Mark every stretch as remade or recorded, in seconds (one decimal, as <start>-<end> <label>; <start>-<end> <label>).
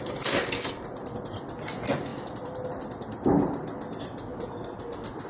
0.0-5.3 recorded